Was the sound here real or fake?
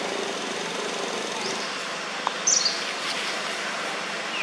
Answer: real